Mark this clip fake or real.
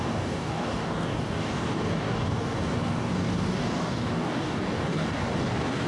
fake